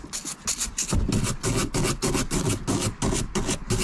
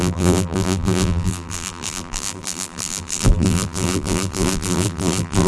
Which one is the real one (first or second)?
first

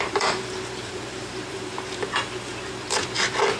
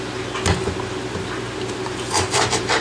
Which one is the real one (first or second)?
second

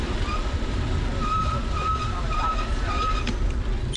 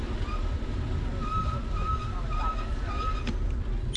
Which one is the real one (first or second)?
second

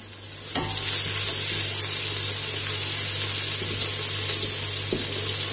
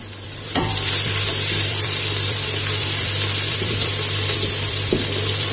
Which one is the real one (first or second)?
first